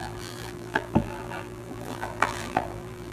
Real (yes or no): no